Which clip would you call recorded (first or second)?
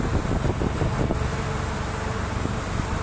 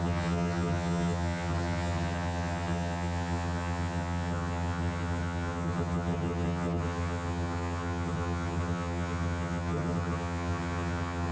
first